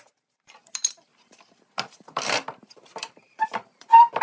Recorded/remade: remade